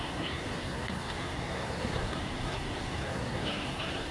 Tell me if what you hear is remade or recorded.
remade